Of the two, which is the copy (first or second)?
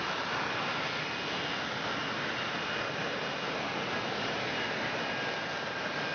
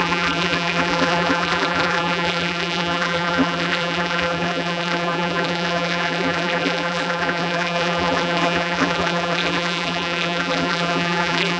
second